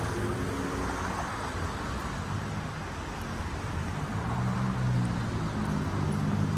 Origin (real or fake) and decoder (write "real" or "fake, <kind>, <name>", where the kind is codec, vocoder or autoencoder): real